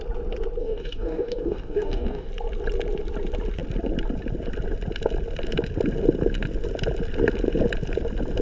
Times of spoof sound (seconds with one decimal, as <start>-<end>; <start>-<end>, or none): 0.6-2.3